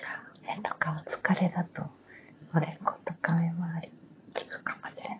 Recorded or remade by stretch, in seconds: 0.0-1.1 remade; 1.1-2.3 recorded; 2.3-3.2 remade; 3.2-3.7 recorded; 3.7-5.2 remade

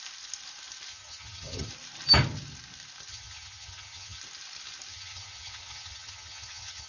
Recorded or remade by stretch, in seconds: 0.0-0.9 recorded; 0.9-1.7 remade; 1.7-3.1 recorded; 3.1-4.2 remade; 4.2-4.9 recorded; 4.9-6.9 remade

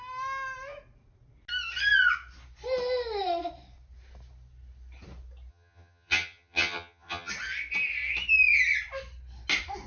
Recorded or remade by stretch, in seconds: 0.0-5.5 recorded; 5.5-7.3 remade; 7.3-9.9 recorded

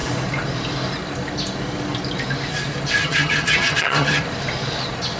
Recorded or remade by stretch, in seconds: 0.0-3.0 recorded; 3.0-4.2 remade; 4.2-5.2 recorded

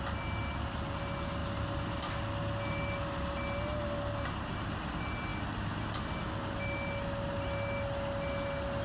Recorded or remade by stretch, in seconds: 0.0-8.8 recorded